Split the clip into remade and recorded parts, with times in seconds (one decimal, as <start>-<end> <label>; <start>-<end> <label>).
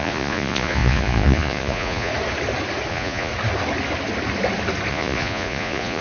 0.0-2.1 remade; 2.1-2.9 recorded; 2.9-3.3 remade; 3.3-4.9 recorded; 4.9-6.0 remade